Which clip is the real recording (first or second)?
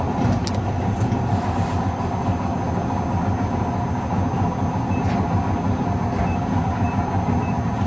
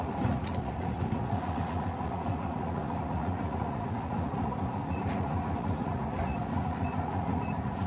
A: first